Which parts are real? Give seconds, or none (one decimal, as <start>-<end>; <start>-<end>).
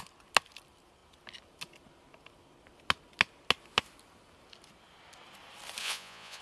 0.0-5.8